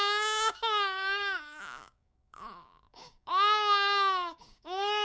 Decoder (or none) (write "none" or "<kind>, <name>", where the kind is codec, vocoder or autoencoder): codec, DAC